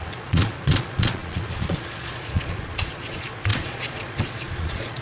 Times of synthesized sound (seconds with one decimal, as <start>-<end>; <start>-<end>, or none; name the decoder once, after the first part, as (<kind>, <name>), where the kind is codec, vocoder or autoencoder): 0.0-5.0 (vocoder, Vocos)